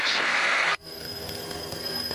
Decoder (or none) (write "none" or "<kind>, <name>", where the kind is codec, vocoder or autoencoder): codec, SNAC